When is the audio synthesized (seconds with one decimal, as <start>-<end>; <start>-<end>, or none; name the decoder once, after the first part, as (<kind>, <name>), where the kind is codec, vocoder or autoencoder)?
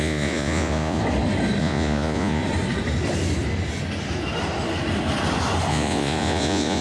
0.0-1.0 (vocoder, Vocos); 1.6-2.4; 5.7-6.8